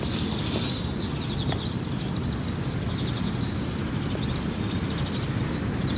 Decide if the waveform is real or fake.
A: real